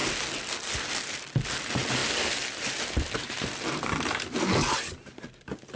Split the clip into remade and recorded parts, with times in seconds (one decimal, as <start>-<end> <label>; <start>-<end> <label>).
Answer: 0.0-5.8 recorded